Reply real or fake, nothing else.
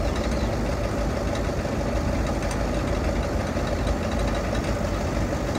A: real